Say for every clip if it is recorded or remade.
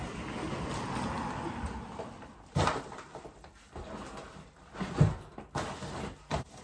recorded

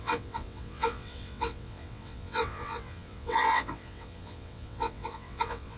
remade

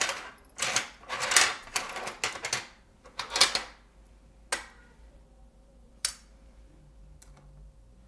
recorded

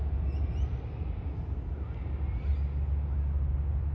recorded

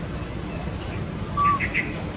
recorded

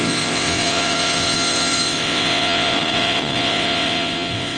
remade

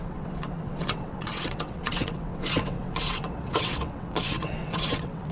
remade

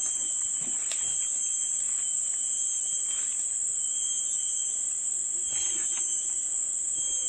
recorded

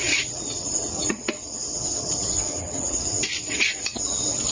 remade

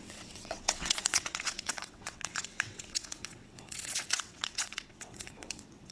remade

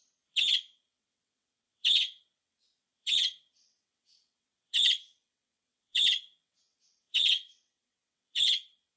remade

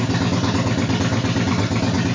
recorded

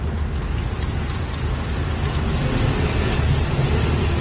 recorded